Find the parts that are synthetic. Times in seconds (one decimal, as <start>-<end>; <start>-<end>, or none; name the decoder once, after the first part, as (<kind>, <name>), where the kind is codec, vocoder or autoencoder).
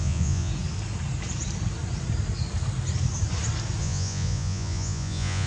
0.0-0.5 (vocoder, Vocos); 3.8-5.5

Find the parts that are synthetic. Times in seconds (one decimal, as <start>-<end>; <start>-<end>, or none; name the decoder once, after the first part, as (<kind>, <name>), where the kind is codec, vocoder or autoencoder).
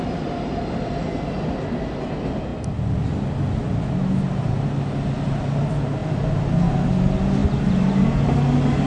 none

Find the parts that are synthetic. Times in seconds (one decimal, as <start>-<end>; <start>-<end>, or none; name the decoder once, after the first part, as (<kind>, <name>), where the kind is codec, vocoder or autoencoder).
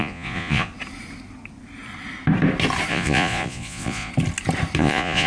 0.0-0.7 (vocoder, Vocos); 2.9-4.1; 4.8-5.3